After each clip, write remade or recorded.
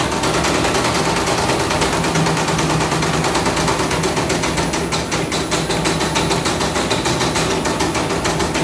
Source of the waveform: recorded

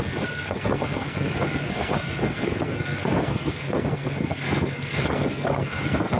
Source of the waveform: remade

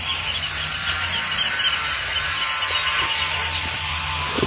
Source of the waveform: recorded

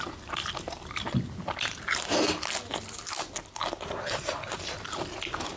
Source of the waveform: recorded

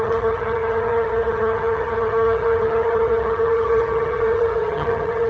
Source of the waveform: remade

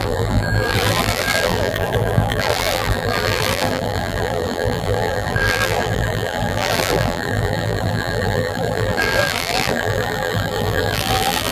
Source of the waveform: remade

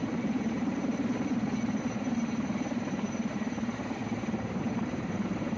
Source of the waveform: remade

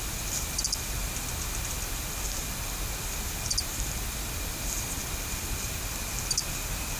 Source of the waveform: recorded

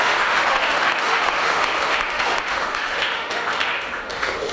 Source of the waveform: remade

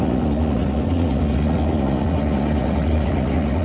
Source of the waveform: remade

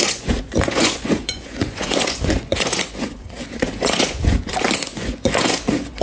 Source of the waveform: remade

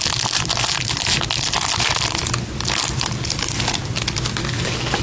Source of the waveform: recorded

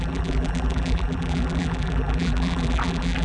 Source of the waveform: remade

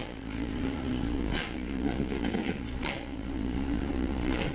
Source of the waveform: remade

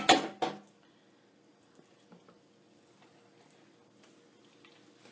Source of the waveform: recorded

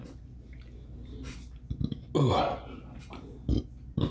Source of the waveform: recorded